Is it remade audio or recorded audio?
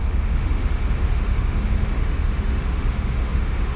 remade